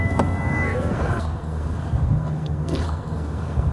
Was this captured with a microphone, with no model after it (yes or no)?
no